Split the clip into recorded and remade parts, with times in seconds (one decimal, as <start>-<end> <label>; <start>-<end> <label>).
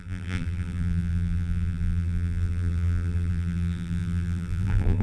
0.0-5.0 remade